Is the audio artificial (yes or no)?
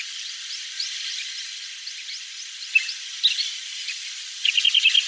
no